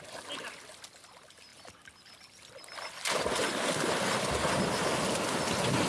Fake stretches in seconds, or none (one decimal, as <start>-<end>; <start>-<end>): none